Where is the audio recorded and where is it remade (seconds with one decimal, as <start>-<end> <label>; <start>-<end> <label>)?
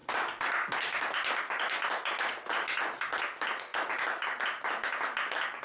0.0-3.2 remade; 3.2-3.7 recorded; 3.7-4.7 remade; 4.7-5.6 recorded